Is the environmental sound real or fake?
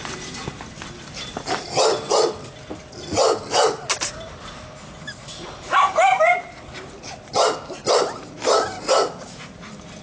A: real